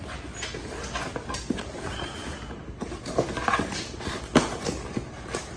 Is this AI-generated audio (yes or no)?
no